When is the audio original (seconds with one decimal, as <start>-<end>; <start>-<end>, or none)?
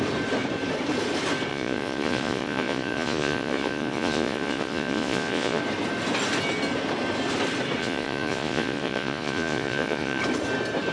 0.0-1.5; 5.6-7.8; 10.2-10.9